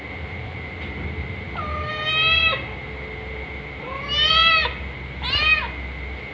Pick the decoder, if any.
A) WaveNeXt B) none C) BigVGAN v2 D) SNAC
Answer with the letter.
B